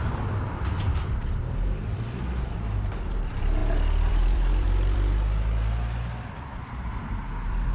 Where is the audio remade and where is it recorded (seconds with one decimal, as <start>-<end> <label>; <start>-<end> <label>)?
0.0-0.5 recorded; 0.5-7.7 remade